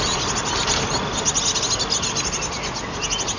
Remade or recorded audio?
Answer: recorded